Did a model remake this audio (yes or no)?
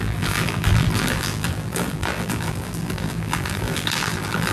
yes